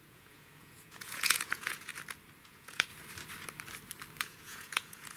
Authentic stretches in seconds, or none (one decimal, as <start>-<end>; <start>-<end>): 1.9-2.4; 2.9-4.2